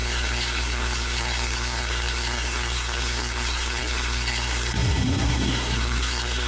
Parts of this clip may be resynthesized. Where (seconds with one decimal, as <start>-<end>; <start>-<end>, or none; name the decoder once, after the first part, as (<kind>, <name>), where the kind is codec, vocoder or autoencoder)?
0.0-6.5 (codec, SNAC)